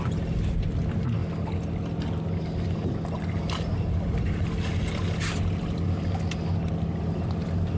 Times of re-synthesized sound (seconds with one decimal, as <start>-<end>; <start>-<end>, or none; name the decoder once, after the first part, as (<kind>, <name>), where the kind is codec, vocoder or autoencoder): none